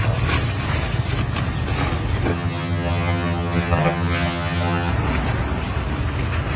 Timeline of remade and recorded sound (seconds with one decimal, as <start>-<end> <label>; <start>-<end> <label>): 0.0-2.3 recorded; 2.3-4.9 remade; 4.9-6.6 recorded